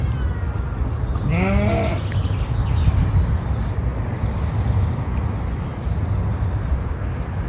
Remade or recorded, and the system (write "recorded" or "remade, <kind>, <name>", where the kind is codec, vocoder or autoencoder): recorded